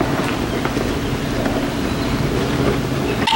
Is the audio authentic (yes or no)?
yes